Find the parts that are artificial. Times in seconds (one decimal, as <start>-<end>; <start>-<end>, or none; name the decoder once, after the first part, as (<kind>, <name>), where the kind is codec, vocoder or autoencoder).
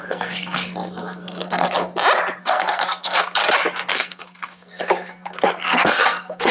0.0-1.9 (codec, SNAC); 2.4-3.4; 3.9-6.5